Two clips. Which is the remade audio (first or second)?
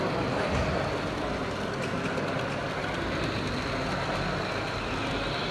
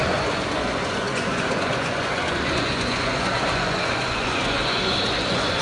second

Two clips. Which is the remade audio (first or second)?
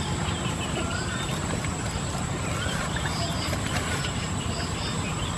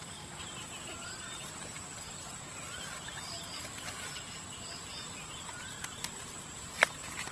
first